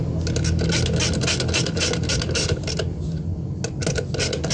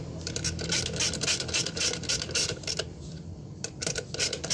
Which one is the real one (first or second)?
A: first